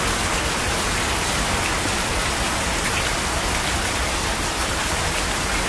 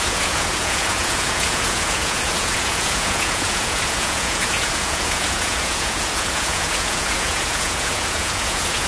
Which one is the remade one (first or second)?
second